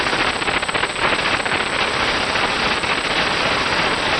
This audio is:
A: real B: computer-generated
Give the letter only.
A